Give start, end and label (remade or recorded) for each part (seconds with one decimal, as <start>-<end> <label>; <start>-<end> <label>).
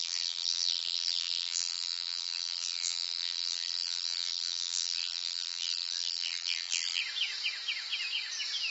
0.0-7.0 remade; 7.0-8.7 recorded